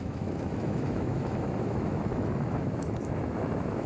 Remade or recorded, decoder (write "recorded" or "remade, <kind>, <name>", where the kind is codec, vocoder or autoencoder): remade, autoencoder, DAC-VAE